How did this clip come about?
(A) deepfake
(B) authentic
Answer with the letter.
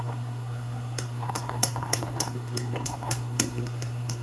A